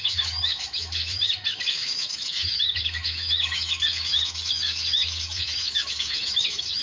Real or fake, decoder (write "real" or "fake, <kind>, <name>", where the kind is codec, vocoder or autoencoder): fake, autoencoder, DAC-VAE